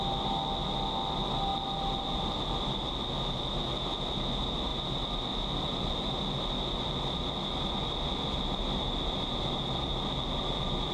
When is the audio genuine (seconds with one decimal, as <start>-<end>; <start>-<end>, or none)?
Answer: 0.0-10.9